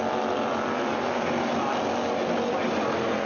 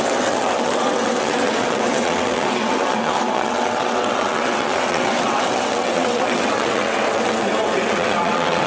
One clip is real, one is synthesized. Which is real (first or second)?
first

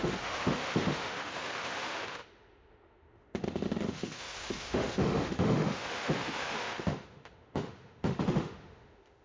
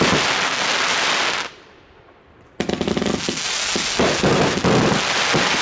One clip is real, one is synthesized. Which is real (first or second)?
second